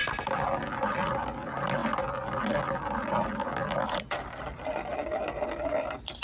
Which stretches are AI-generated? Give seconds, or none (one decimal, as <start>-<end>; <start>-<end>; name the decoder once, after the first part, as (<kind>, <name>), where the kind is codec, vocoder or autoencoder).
none